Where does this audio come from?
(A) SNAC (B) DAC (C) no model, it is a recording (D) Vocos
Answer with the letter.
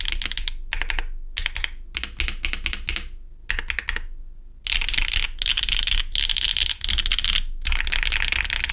C